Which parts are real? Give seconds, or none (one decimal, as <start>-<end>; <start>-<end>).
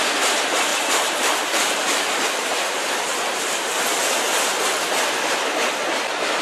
0.0-0.7; 4.1-6.4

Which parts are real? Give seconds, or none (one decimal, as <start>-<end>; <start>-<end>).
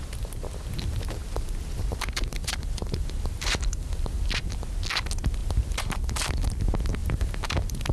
0.0-1.2; 4.6-5.4; 6.3-7.0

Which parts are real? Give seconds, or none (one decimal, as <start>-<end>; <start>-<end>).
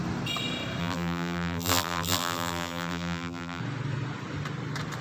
0.0-0.8; 3.6-5.0